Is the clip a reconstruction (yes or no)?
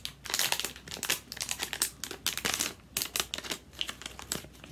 no